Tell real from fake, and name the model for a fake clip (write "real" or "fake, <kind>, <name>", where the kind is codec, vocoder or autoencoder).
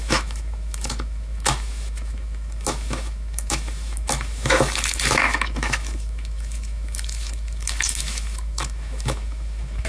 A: fake, autoencoder, DAC-VAE